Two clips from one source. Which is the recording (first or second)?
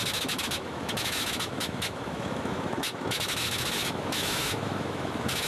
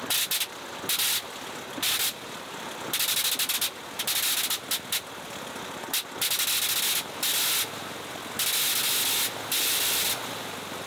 second